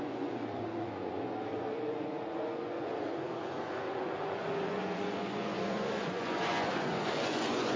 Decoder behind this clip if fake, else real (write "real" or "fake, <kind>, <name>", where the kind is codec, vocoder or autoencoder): fake, vocoder, Vocos